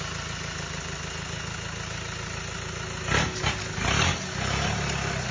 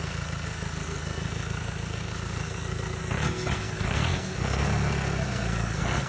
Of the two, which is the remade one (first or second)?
second